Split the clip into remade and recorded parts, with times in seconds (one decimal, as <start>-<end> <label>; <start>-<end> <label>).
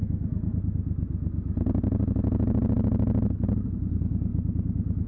0.0-0.6 remade; 0.6-5.1 recorded